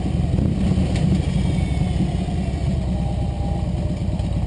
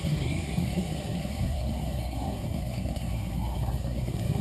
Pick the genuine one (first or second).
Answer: first